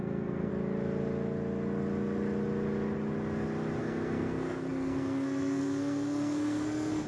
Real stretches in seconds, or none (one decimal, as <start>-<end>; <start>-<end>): 0.5-3.8